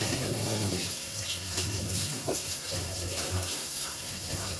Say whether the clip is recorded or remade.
remade